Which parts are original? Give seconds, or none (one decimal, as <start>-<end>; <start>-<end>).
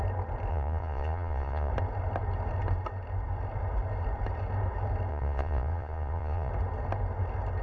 0.0-0.5; 1.7-5.1; 6.5-7.6